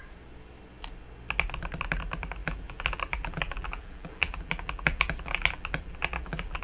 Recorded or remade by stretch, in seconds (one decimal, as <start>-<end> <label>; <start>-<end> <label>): 0.0-2.4 recorded; 2.4-6.6 remade